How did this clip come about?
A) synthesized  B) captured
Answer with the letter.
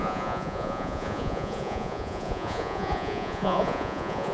A